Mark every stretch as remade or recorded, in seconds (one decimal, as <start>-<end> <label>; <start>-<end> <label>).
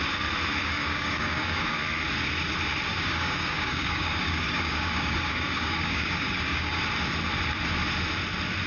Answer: 0.0-0.6 recorded; 0.6-1.8 remade; 1.8-2.9 recorded; 2.9-6.8 remade; 6.8-8.7 recorded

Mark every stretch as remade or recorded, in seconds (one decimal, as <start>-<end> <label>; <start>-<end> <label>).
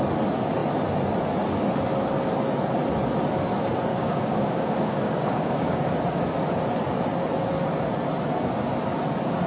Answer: 0.0-3.9 recorded; 3.9-5.8 remade; 5.8-9.5 recorded